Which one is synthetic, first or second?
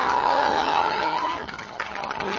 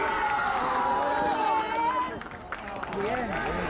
first